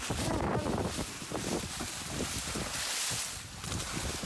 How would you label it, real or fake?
fake